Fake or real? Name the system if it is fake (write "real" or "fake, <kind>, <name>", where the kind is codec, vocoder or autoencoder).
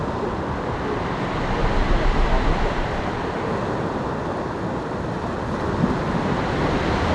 real